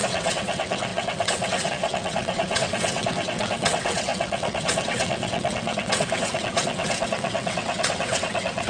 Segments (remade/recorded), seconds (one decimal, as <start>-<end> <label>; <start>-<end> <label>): 0.0-8.7 remade